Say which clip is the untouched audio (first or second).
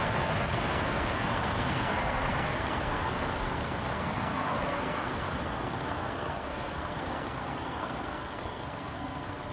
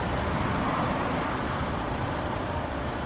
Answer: second